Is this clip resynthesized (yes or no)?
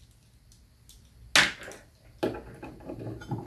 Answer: no